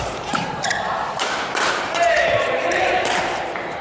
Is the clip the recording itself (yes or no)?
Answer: no